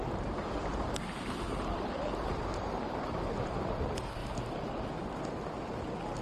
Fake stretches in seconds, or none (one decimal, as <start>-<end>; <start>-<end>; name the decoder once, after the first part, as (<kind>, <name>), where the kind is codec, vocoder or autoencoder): 0.0-4.2 (vocoder, BigVGAN v2); 4.9-6.2